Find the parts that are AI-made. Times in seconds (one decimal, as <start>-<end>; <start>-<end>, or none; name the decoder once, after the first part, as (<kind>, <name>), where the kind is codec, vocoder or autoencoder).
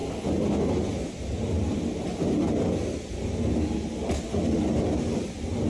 none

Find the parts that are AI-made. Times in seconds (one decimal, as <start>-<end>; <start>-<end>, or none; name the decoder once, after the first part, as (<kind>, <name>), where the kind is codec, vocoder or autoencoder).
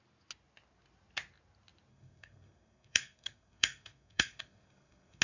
1.9-5.2 (codec, SNAC)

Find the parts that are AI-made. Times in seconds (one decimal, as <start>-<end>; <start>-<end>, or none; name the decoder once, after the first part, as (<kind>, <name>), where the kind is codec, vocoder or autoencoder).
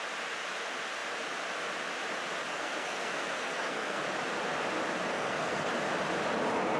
2.5-4.0 (codec, SNAC); 5.1-5.7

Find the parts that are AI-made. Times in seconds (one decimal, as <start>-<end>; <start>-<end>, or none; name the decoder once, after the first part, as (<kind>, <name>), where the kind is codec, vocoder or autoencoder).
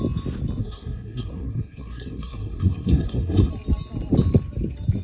0.6-3.5 (codec, SNAC)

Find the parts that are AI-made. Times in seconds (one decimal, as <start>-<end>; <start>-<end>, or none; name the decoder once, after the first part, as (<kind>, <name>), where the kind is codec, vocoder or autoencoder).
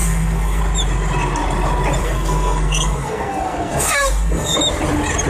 0.0-0.6 (codec, SNAC); 2.0-4.6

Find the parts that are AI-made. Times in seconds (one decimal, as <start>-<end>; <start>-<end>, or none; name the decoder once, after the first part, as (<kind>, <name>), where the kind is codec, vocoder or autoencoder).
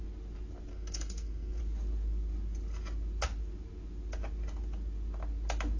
0.7-1.6 (codec, SNAC)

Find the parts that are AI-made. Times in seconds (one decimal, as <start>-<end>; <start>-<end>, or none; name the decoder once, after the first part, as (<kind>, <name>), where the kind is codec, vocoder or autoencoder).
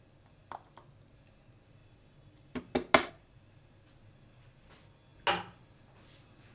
none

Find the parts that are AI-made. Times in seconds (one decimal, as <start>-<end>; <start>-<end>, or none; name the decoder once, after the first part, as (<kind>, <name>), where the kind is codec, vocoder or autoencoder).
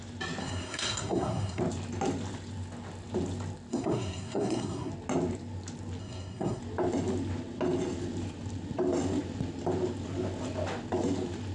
0.4-1.6 (codec, SNAC); 3.7-4.9; 6.0-6.6